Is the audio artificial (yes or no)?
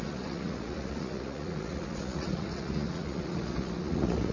yes